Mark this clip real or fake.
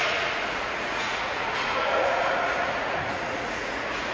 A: fake